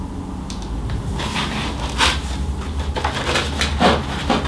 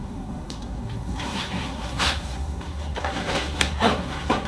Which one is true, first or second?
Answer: first